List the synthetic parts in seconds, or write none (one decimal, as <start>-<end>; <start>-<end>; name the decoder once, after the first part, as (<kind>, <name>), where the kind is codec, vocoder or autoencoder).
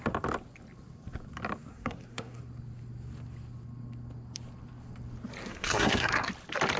1.7-2.4 (codec, SNAC); 5.4-6.3